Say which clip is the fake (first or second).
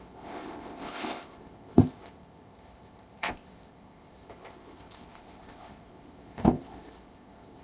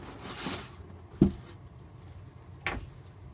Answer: first